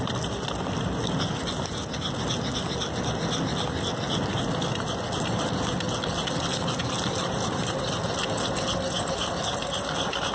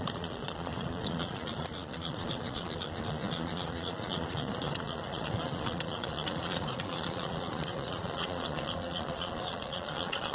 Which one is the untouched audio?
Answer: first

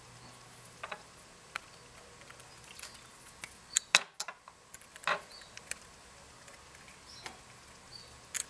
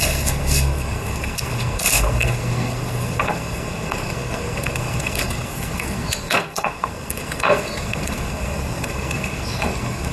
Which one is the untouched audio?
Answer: first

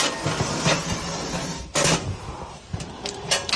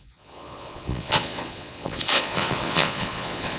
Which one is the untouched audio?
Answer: first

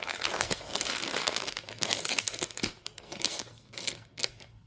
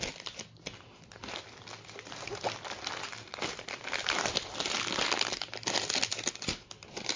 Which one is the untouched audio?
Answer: second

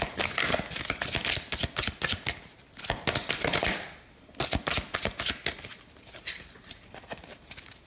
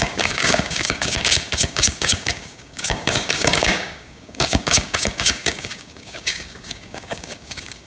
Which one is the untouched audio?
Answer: first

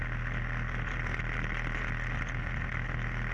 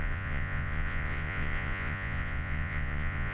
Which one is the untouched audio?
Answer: first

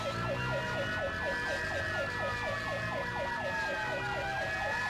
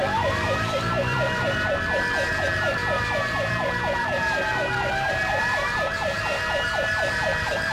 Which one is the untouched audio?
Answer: first